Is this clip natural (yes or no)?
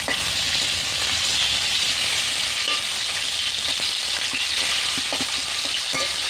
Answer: yes